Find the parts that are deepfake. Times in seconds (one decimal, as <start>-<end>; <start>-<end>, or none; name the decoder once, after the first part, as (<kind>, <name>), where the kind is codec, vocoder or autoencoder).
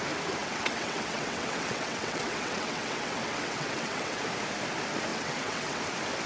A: 0.4-4.2 (vocoder, WaveNeXt); 5.1-5.8